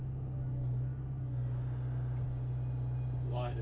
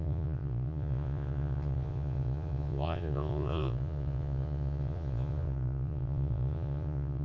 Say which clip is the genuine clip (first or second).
first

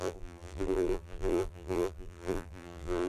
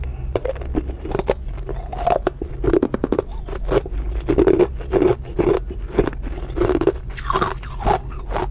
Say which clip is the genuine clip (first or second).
second